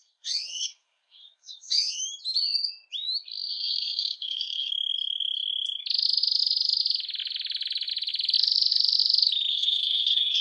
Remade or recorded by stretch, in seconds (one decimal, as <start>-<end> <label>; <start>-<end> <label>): 0.0-2.0 remade; 2.0-3.5 recorded; 3.5-4.7 remade; 4.7-9.5 recorded; 9.5-10.4 remade